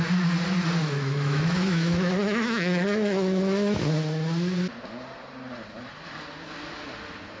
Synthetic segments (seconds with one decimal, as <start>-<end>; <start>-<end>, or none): 0.8-3.8